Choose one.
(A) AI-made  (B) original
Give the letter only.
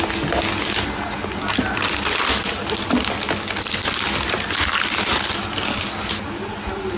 B